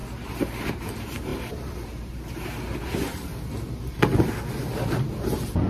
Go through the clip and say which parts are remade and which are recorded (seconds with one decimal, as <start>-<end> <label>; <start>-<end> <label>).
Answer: 0.0-0.7 recorded; 0.7-3.3 remade; 3.3-5.0 recorded; 5.0-5.7 remade